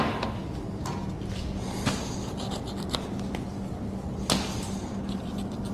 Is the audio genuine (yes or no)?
yes